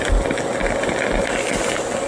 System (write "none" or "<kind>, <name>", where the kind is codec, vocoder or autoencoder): none